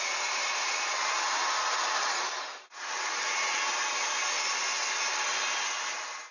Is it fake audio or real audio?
real